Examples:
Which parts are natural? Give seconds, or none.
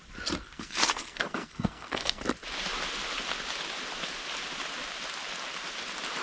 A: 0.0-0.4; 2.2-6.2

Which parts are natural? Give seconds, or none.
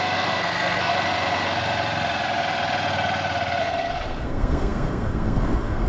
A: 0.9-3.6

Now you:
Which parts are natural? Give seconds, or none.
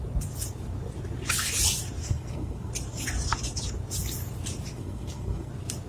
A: 0.0-2.0; 2.7-4.7; 5.5-5.9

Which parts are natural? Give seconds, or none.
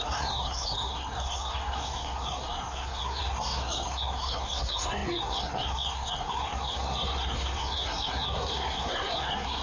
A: none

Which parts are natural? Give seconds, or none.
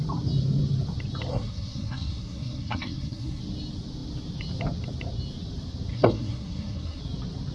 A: 0.0-1.3; 3.4-5.9; 7.0-7.5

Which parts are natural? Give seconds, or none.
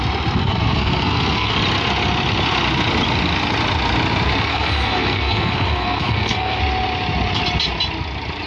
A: 0.0-0.4; 1.5-4.5; 6.6-8.5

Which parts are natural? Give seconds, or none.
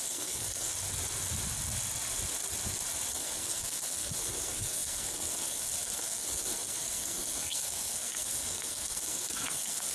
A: 0.7-3.1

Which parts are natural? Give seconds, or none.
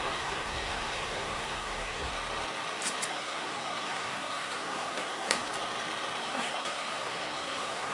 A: 2.1-3.1; 5.5-6.2